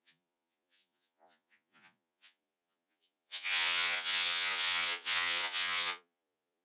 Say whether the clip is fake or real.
fake